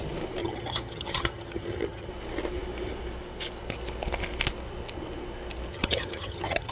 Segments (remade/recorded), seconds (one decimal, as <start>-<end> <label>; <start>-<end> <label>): 0.0-0.4 recorded; 0.4-2.1 remade; 2.1-5.7 recorded; 5.7-6.7 remade